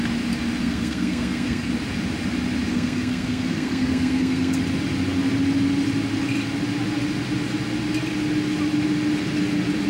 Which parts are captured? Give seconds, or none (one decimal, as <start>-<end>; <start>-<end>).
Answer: 0.0-0.6; 1.7-2.7; 4.6-9.9